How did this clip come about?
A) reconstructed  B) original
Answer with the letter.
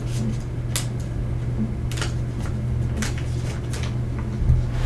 B